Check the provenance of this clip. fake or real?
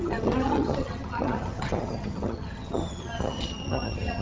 fake